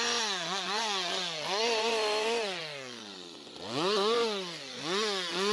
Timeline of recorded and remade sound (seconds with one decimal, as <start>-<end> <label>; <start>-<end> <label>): 0.0-5.5 remade